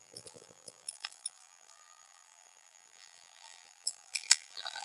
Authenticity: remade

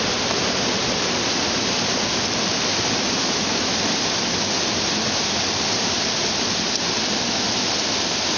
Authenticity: recorded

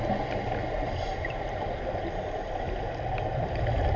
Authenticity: recorded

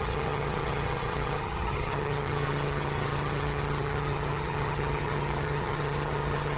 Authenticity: remade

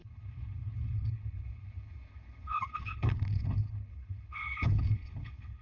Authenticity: remade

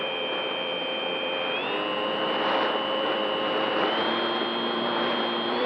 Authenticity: remade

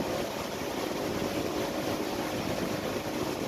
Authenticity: recorded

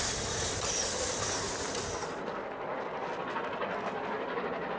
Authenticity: recorded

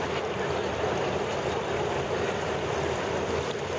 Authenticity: remade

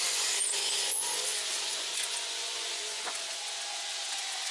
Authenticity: remade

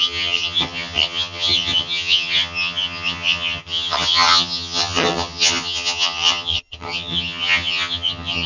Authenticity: remade